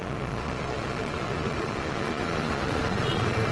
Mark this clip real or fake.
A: fake